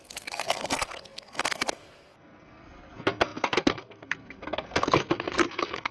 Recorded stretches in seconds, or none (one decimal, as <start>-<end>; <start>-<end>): none